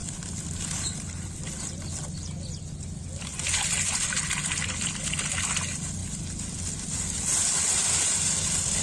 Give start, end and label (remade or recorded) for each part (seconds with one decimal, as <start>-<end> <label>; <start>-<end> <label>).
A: 0.0-8.8 recorded